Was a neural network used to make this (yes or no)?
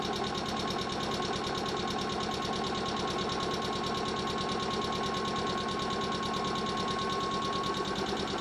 no